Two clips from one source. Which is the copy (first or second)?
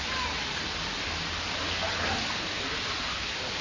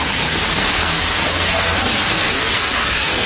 second